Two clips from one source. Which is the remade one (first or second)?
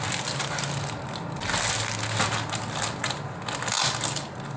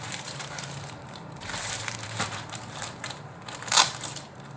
second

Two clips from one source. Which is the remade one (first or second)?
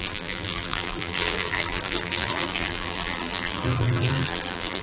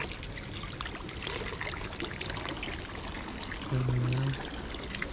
first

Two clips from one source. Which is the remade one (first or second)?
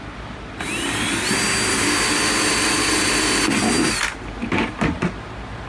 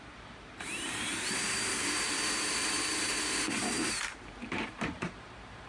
second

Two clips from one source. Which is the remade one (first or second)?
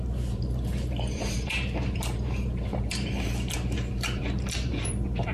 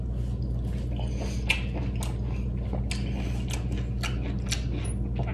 first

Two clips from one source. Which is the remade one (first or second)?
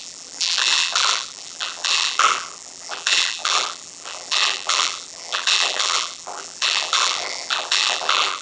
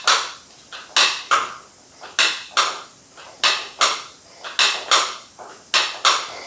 first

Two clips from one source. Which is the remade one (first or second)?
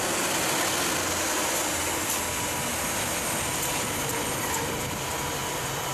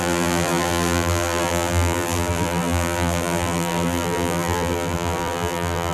second